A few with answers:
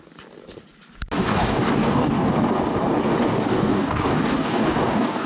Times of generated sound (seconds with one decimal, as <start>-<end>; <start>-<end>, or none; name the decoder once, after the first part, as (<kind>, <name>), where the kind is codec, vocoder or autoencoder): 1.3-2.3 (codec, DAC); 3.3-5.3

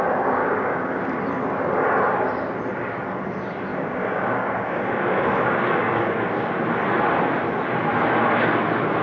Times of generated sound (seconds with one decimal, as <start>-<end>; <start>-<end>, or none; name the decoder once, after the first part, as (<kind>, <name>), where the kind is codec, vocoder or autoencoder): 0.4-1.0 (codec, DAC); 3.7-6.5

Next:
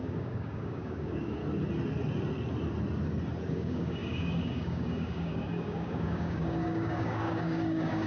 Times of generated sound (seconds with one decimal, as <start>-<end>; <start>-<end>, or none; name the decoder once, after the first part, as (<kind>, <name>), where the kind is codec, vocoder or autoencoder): 0.0-1.4 (codec, DAC); 3.5-8.1

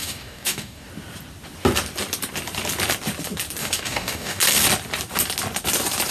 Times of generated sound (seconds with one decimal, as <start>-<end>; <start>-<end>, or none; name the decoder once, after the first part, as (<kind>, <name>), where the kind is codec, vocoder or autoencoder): 0.0-0.9 (codec, DAC); 3.6-4.4

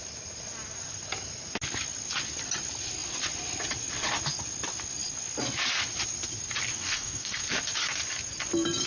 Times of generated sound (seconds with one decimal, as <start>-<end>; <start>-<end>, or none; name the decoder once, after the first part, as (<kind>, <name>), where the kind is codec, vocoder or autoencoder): 6.7-7.4 (codec, DAC)

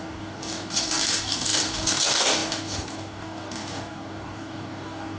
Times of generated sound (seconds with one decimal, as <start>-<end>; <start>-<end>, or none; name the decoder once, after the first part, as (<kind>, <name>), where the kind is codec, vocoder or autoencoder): 0.0-5.2 (codec, DAC)

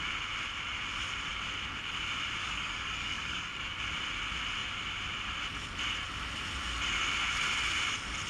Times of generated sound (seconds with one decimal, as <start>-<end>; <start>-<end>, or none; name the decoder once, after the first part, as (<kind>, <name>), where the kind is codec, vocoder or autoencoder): 2.4-3.7 (codec, DAC)

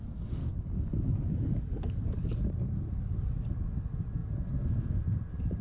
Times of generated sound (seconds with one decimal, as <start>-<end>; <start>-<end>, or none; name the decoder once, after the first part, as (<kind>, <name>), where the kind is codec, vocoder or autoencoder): 0.4-2.5 (codec, DAC)